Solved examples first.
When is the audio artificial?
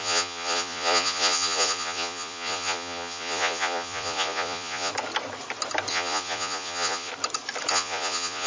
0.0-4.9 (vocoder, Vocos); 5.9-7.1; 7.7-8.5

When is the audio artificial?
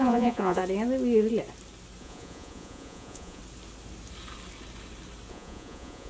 0.0-0.6 (vocoder, Vocos); 2.0-3.4; 5.3-6.1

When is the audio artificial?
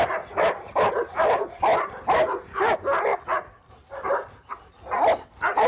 none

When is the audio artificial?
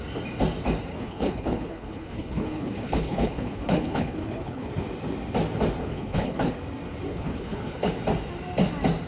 0.9-4.7 (codec, HILCodec); 5.8-6.5; 7.1-7.9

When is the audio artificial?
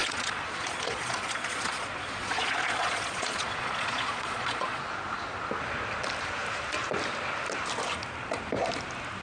0.0-4.8 (vocoder, Vocos)